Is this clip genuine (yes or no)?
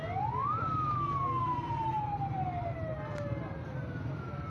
yes